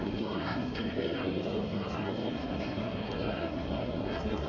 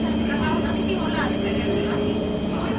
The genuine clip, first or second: second